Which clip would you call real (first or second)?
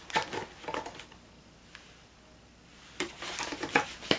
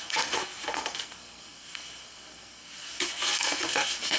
first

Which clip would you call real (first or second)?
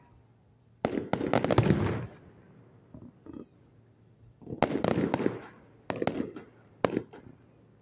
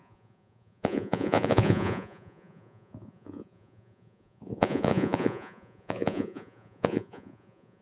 first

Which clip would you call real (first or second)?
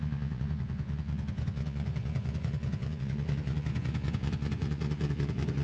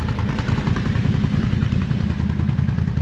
second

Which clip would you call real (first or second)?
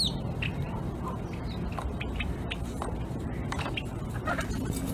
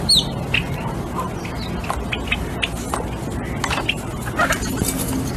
second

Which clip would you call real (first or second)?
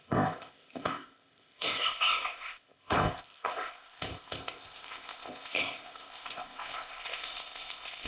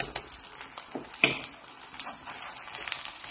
second